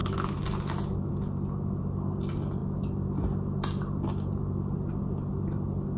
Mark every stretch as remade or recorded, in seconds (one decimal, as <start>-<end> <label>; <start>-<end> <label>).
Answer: 0.0-6.0 recorded